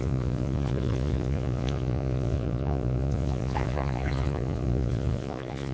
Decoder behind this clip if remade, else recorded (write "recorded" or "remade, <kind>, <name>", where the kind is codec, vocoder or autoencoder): remade, vocoder, Vocos